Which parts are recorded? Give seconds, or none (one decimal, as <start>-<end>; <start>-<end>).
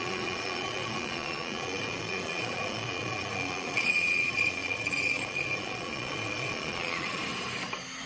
7.2-8.1